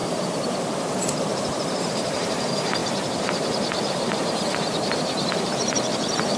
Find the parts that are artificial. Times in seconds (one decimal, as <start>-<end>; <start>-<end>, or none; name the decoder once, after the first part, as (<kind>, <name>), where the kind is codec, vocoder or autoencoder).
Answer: 0.0-6.4 (vocoder, BigVGAN v2)